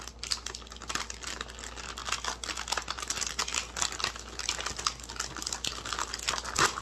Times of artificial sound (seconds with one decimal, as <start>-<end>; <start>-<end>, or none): none